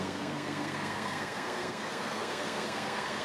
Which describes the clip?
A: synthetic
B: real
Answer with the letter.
A